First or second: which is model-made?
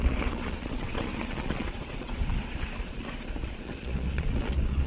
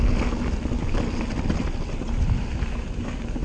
first